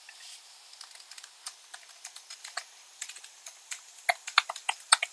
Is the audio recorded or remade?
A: recorded